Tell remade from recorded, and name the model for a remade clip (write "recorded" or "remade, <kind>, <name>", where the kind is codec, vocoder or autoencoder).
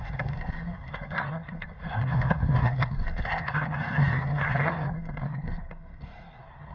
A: remade, codec, SNAC